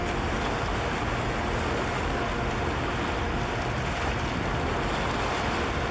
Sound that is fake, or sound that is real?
real